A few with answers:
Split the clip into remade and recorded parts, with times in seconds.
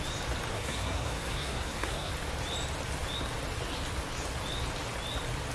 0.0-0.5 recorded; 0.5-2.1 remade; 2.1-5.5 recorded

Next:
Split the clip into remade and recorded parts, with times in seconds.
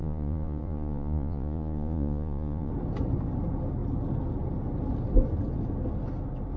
0.0-2.7 remade; 2.7-6.6 recorded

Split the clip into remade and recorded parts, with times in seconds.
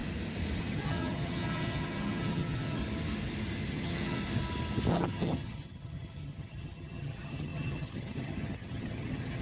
0.0-0.6 recorded; 0.6-2.8 remade; 2.8-3.7 recorded; 3.7-4.2 remade; 4.2-4.9 recorded; 4.9-9.4 remade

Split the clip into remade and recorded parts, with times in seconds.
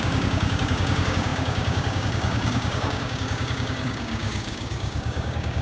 0.0-5.6 remade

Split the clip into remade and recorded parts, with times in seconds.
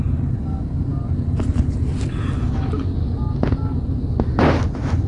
0.0-5.1 recorded